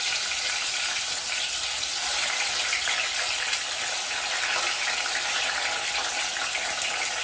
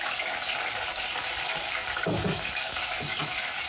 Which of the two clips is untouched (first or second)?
first